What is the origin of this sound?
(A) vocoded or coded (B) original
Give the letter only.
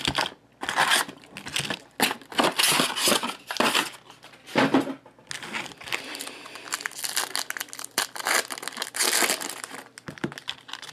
B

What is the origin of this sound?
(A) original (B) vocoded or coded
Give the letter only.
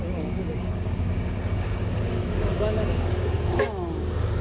B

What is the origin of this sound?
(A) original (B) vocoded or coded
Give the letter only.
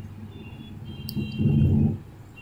A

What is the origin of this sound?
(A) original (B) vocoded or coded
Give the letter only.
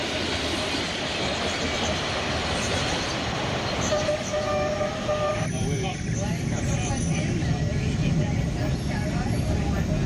A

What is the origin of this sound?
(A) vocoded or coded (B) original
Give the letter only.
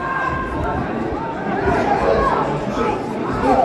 B